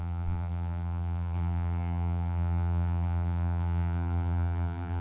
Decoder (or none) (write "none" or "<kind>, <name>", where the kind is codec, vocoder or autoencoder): vocoder, BigVGAN v2